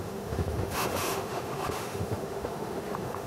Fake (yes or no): yes